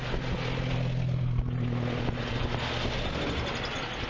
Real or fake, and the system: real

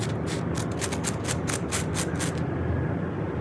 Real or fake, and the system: real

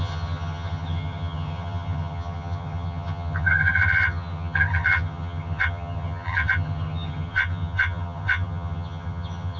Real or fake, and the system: fake, vocoder, HiFi-GAN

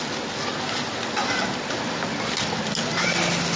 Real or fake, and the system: real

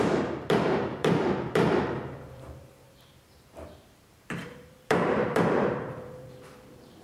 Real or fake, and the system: fake, vocoder, BigVGAN v2